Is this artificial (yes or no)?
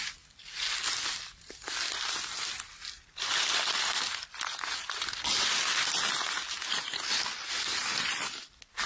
no